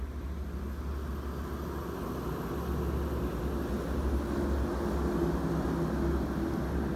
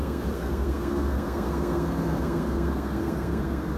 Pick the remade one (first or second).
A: second